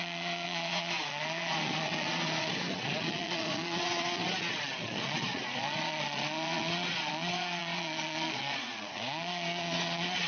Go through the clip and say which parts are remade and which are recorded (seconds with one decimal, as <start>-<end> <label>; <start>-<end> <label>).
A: 0.0-10.3 remade